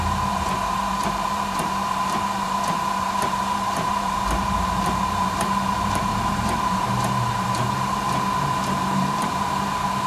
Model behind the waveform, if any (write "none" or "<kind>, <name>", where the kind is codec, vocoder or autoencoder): vocoder, BigVGAN v2